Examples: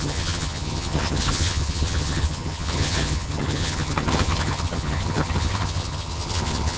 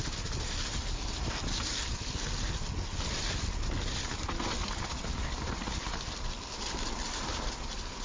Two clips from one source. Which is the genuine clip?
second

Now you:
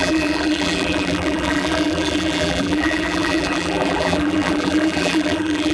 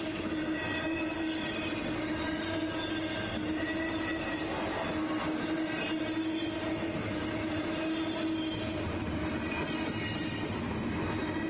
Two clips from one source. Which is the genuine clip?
second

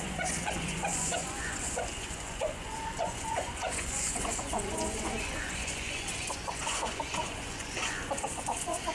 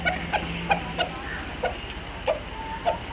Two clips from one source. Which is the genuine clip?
second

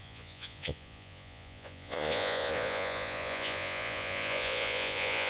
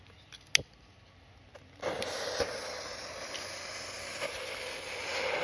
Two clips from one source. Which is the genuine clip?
second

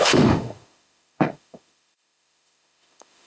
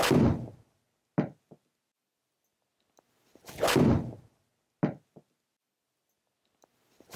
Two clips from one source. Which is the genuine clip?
second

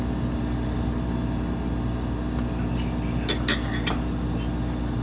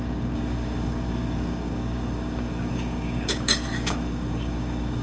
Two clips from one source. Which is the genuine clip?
first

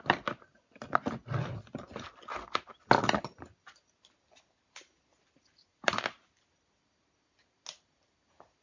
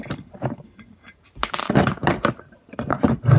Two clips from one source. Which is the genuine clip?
first